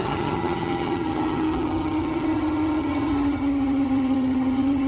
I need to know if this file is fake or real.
fake